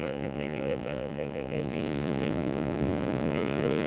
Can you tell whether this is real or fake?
fake